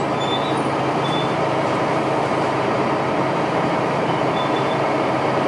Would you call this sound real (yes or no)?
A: no